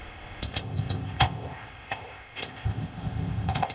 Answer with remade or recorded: remade